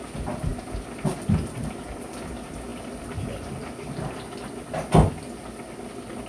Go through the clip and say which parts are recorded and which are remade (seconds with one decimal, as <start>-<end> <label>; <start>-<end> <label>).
0.0-6.3 recorded